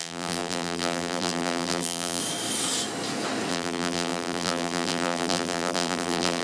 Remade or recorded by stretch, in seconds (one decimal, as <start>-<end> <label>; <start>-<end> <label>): 0.0-2.2 remade; 2.2-3.5 recorded; 3.5-6.4 remade